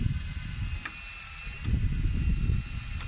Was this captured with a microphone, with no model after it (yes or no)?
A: yes